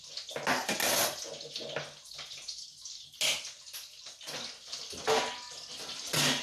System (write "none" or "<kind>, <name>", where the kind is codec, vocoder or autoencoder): none